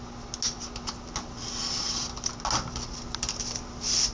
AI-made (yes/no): no